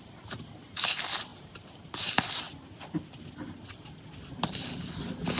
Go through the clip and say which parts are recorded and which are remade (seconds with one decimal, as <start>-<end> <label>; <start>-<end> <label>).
0.0-1.3 recorded; 1.3-2.1 remade; 2.1-5.4 recorded